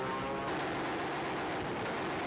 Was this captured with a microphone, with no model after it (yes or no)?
yes